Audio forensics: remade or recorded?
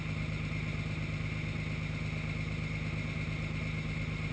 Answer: recorded